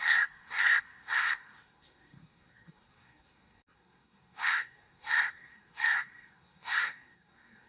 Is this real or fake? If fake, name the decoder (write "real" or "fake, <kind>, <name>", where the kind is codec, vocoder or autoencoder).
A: fake, codec, SNAC